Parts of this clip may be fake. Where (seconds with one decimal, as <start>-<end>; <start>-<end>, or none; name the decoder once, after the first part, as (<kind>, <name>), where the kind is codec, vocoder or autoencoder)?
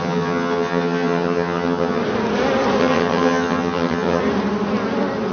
0.0-2.0 (vocoder, HiFi-GAN); 2.8-4.2